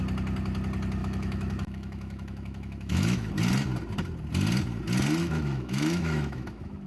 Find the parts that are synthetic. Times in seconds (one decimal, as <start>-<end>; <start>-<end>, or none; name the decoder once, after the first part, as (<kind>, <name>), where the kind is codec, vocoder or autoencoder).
1.0-3.3 (autoencoder, DAC-VAE); 5.2-6.9